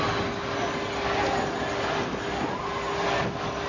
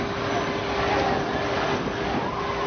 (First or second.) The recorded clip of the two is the first